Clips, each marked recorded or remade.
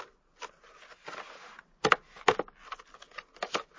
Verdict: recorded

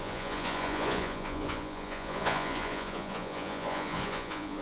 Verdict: remade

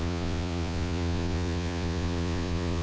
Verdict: remade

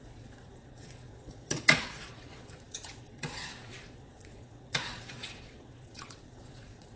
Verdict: remade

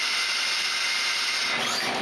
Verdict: recorded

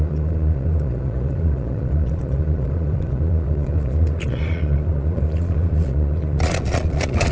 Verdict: remade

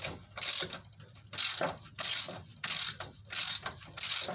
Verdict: recorded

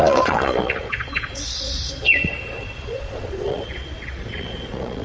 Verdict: remade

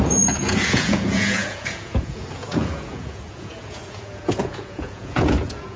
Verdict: remade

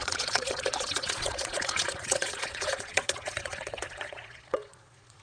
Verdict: remade